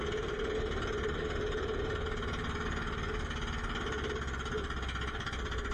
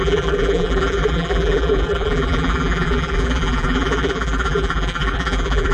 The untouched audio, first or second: first